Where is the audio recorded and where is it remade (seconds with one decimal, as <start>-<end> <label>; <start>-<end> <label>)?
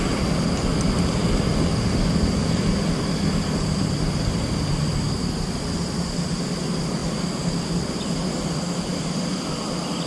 0.0-2.4 recorded; 2.4-3.2 remade; 3.2-8.9 recorded; 8.9-9.6 remade; 9.6-10.1 recorded